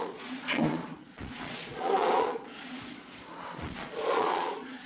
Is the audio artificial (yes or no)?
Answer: yes